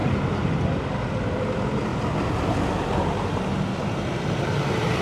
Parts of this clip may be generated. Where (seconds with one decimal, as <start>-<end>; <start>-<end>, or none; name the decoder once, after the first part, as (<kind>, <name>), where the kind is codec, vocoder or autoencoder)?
0.0-0.5 (vocoder, BigVGAN v2); 1.9-5.0